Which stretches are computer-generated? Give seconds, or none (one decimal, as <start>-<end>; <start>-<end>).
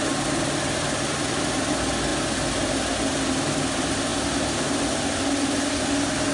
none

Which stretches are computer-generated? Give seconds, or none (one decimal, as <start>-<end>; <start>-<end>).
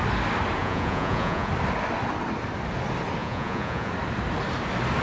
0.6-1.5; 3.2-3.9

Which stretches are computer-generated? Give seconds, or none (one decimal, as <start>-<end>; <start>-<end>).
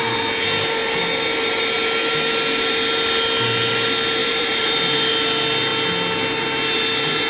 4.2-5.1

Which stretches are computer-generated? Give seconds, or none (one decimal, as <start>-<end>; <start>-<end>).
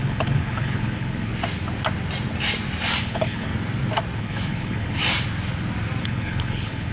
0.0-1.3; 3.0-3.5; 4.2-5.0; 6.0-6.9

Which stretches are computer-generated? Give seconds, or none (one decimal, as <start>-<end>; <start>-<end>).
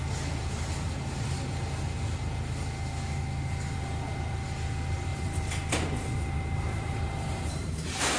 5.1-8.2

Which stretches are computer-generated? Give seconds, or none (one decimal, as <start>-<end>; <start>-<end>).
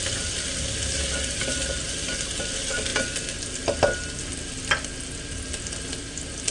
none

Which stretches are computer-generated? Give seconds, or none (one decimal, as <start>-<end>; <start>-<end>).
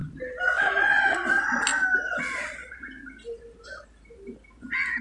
0.0-1.2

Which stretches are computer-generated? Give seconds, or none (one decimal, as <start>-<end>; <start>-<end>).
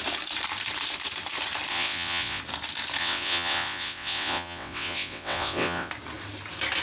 1.7-2.4; 3.0-5.9